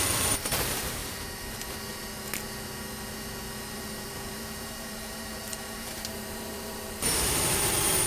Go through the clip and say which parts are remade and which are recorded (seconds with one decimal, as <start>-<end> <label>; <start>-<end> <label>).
0.0-1.0 remade; 1.0-3.7 recorded; 3.7-8.1 remade

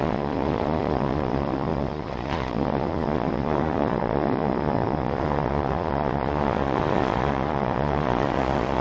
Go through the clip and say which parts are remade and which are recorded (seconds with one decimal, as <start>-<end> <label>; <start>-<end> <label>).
0.0-8.8 remade

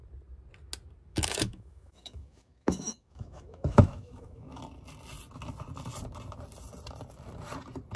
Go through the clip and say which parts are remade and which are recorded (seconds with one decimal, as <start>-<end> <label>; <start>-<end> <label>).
0.0-1.1 recorded; 1.1-4.6 remade; 4.6-8.0 recorded

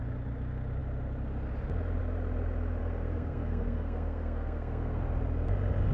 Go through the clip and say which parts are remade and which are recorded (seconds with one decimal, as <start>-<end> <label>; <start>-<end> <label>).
0.0-2.8 recorded; 2.8-5.0 remade; 5.0-5.9 recorded